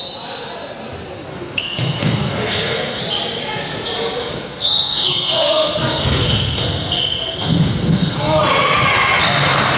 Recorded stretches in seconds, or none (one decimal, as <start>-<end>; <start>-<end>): 0.0-1.3; 3.0-4.2; 8.4-9.8